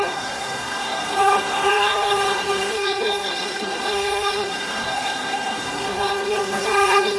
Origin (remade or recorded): remade